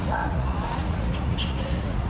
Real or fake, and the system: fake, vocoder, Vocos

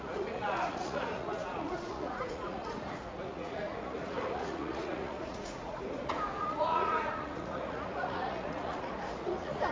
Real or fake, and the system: fake, vocoder, Vocos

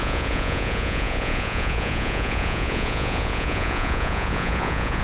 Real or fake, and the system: fake, vocoder, Vocos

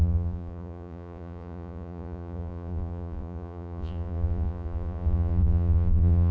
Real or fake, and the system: fake, vocoder, Vocos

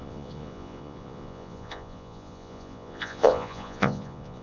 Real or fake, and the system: fake, vocoder, Vocos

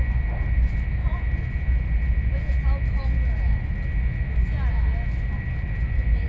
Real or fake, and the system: real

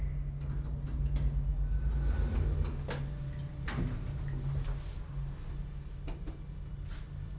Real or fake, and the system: real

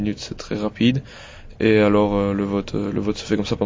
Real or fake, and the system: real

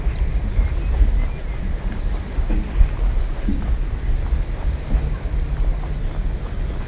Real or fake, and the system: real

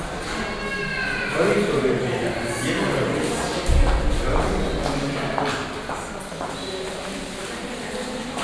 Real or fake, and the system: real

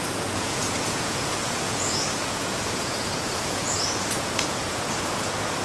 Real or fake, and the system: fake, vocoder, Vocos